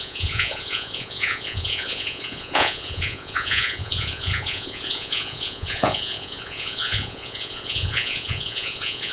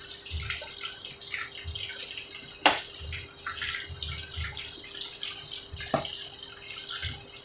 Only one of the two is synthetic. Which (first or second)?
first